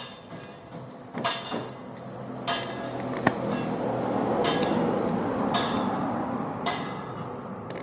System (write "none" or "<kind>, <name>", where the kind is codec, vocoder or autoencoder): none